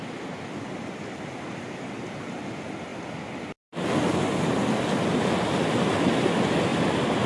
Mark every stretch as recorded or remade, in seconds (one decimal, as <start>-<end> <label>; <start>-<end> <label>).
0.0-7.3 recorded